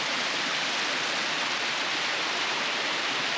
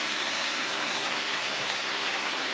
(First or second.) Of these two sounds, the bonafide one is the first